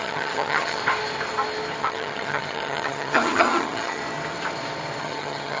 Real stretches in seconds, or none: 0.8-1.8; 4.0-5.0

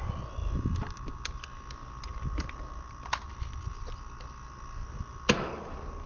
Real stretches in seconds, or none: 0.0-6.1

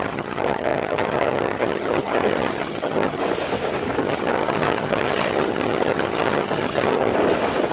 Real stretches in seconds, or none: 3.2-4.0; 7.1-7.7